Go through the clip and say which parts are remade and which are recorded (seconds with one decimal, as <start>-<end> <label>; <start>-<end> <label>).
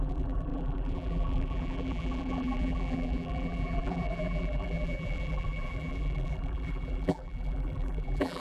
0.0-8.4 remade